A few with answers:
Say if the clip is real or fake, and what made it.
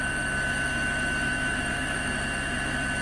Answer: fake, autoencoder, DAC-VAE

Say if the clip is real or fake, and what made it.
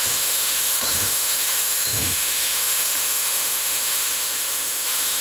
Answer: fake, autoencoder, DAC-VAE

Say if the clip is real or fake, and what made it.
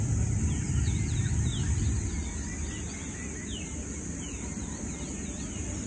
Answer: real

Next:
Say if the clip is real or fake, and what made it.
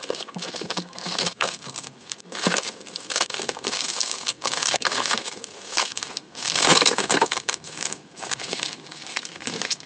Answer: fake, codec, SNAC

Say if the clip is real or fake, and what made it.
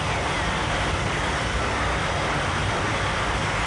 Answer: real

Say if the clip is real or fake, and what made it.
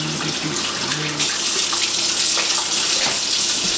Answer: real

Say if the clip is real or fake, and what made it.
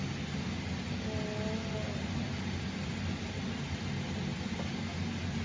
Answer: real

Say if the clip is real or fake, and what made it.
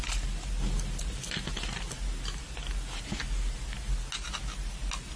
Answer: real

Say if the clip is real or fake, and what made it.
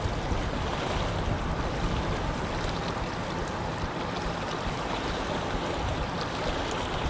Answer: real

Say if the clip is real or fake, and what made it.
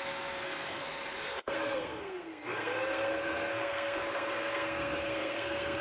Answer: fake, codec, SNAC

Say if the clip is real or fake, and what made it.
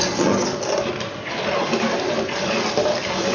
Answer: real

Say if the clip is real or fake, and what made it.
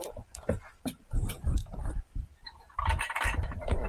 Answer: fake, vocoder, BigVGAN v2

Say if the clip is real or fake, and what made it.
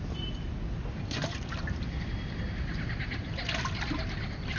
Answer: real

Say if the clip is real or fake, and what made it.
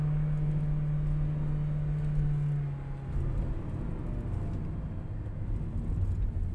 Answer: real